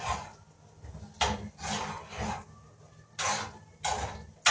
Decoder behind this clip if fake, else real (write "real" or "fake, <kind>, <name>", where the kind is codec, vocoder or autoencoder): real